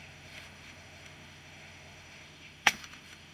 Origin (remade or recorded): remade